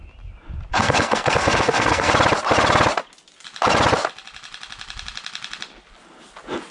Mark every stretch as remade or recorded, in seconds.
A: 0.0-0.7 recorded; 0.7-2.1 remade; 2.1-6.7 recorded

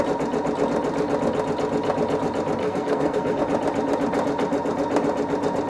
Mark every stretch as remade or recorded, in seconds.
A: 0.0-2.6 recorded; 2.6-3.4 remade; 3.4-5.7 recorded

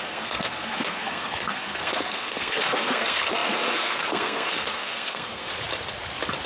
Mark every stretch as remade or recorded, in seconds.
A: 0.0-5.5 remade; 5.5-6.5 recorded